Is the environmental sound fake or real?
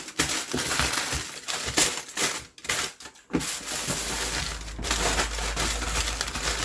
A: real